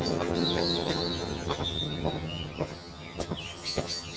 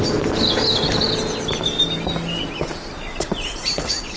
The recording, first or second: second